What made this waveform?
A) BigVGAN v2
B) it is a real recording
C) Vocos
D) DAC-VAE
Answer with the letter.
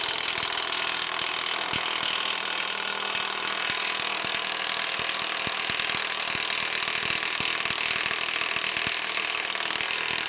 B